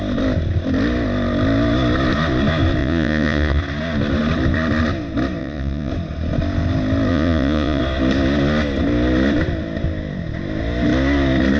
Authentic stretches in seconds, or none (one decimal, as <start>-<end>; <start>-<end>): 0.0-2.8; 3.6-5.4; 5.9-7.1; 7.8-11.6

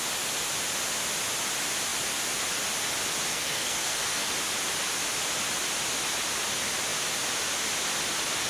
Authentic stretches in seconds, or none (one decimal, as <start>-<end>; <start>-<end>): 0.0-3.3; 4.3-8.5

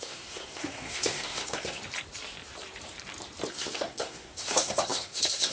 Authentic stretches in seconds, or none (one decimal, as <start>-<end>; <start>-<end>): 1.8-3.5